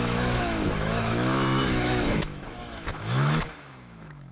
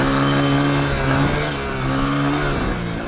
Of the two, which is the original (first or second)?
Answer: second